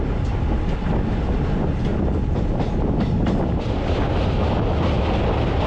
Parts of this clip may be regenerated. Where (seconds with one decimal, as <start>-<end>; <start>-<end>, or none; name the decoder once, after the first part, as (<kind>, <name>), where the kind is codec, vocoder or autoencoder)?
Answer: none

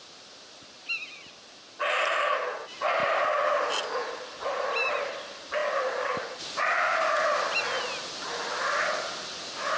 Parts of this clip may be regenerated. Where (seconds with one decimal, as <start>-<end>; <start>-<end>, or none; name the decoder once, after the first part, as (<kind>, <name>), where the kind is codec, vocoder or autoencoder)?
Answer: none

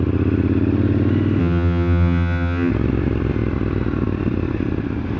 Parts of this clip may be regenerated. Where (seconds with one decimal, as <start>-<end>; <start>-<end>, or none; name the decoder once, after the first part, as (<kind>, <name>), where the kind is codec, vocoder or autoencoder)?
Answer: 1.4-2.7 (vocoder, HiFi-GAN)

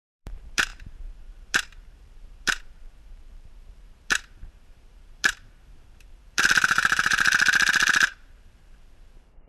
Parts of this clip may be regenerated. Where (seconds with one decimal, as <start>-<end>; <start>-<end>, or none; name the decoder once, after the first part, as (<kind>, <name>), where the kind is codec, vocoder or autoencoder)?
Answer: 0.0-9.5 (vocoder, BigVGAN v2)

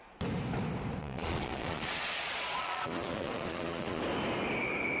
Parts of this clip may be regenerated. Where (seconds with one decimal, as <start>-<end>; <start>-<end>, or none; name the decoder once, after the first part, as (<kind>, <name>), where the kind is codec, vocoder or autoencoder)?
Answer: 1.0-4.0 (vocoder, Vocos)

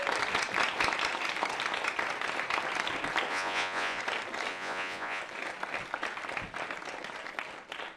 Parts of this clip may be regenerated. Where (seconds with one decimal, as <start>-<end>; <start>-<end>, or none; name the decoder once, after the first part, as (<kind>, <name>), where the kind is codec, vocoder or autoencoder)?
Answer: 3.3-4.0 (vocoder, Vocos); 4.5-5.2

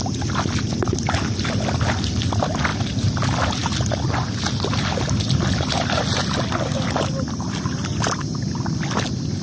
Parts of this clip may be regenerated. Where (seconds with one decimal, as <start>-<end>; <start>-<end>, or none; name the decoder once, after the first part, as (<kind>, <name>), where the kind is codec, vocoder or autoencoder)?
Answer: none

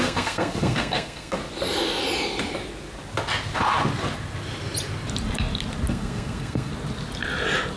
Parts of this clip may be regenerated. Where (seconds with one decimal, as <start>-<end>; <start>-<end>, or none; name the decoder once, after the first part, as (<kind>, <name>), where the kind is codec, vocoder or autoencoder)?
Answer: 0.0-1.4 (codec, SNAC); 5.9-6.7